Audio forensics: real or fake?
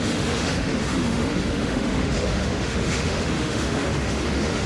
fake